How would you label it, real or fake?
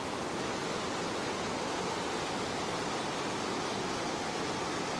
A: real